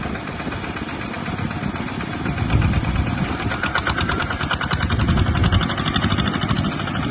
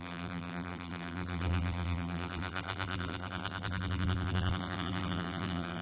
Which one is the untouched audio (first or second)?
first